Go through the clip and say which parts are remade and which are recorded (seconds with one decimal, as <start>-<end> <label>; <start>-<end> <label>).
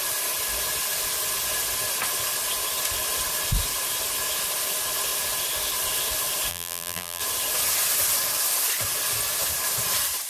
0.0-6.5 recorded; 6.5-7.2 remade; 7.2-10.3 recorded